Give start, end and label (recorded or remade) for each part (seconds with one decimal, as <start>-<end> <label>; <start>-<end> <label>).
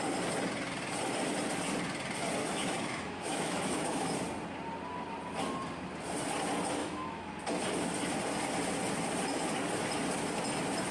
0.0-2.4 recorded; 2.4-4.2 remade; 4.2-6.8 recorded; 6.8-7.3 remade; 7.3-10.9 recorded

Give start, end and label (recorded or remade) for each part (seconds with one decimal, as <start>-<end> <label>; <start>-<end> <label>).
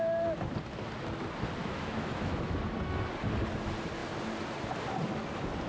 0.0-1.6 recorded; 1.6-2.6 remade; 2.6-5.7 recorded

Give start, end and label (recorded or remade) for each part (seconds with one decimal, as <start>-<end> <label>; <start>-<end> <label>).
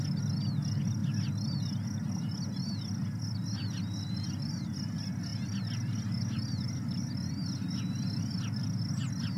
0.0-9.4 recorded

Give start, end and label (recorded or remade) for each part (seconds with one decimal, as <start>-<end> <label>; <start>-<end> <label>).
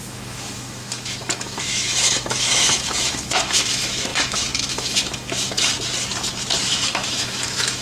0.0-5.7 remade; 5.7-6.6 recorded; 6.6-7.8 remade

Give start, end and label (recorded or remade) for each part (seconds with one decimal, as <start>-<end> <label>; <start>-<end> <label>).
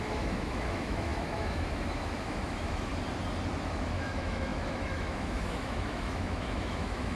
0.0-2.9 remade; 2.9-3.6 recorded; 3.6-7.2 remade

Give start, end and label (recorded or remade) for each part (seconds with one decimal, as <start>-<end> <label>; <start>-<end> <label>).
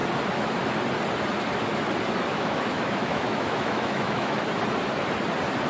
0.0-2.3 recorded; 2.3-4.4 remade; 4.4-5.7 recorded